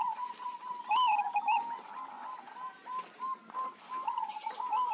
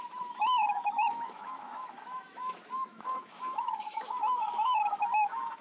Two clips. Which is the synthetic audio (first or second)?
second